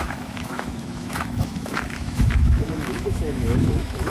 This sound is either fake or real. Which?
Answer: fake